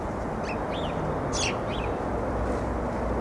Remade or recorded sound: recorded